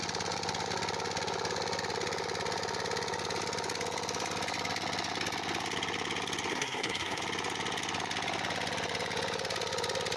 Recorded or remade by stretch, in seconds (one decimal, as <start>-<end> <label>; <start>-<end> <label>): 0.0-6.5 recorded; 6.5-7.2 remade; 7.2-10.2 recorded